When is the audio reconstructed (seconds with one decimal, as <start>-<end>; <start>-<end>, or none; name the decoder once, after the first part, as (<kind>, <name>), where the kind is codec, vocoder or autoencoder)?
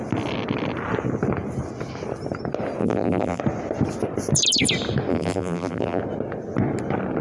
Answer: 2.8-3.4 (vocoder, BigVGAN v2); 5.1-6.0